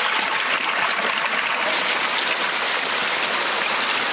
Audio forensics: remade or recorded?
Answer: recorded